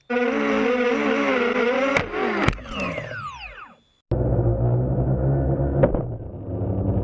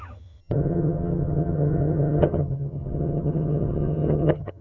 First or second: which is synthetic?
second